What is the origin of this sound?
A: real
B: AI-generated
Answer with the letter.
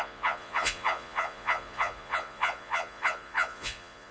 B